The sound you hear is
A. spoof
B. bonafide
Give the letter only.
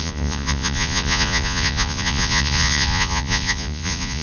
A